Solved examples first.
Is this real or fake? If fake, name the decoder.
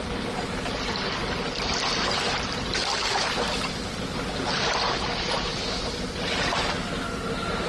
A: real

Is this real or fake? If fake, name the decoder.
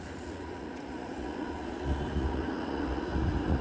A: fake, vocoder, Vocos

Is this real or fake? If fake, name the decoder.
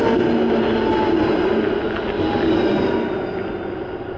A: real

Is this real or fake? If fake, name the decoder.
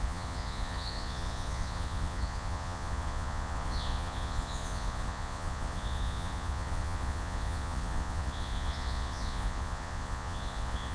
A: fake, vocoder, Vocos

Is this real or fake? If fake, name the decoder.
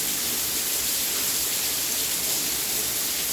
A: real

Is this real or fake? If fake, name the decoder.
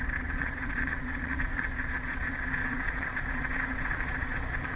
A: fake, vocoder, Vocos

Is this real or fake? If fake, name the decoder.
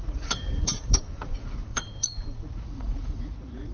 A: fake, vocoder, Vocos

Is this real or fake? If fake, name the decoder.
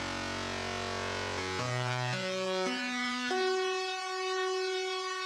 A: fake, vocoder, Vocos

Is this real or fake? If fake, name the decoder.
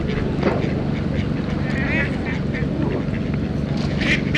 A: real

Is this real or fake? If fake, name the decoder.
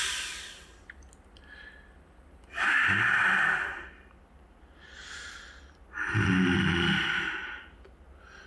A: real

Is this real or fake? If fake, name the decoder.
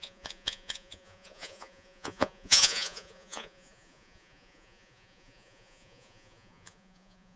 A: fake, vocoder, Vocos